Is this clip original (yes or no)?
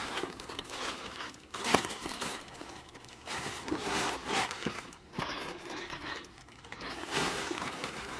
no